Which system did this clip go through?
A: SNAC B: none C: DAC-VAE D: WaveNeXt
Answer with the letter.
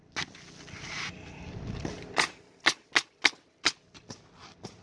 B